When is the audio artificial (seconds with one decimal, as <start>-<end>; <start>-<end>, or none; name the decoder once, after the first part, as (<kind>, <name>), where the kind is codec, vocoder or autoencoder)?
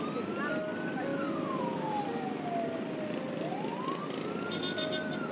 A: none